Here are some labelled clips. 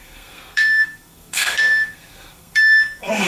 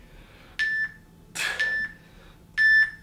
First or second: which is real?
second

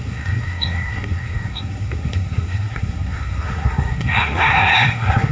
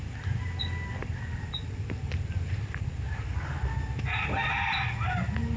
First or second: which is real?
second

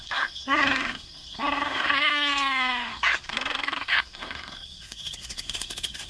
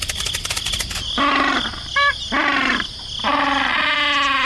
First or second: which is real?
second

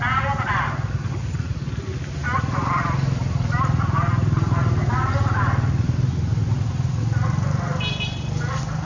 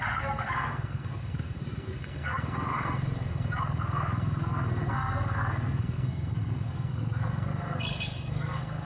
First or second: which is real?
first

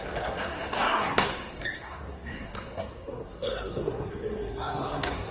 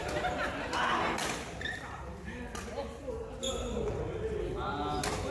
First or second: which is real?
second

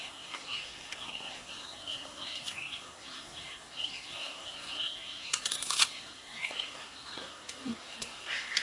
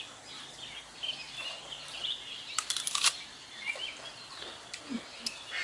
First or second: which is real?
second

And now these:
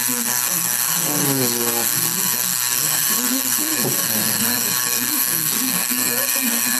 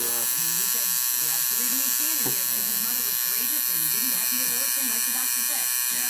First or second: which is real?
second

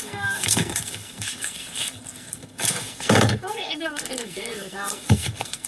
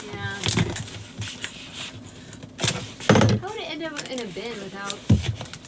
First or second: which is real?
second